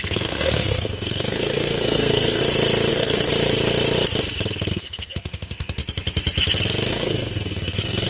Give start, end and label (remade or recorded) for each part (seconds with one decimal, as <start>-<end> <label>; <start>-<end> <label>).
0.0-2.4 remade; 2.4-2.9 recorded; 2.9-3.3 remade; 3.3-4.7 recorded; 4.7-5.8 remade; 5.8-6.9 recorded; 6.9-8.1 remade